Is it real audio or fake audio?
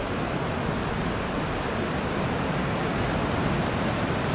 real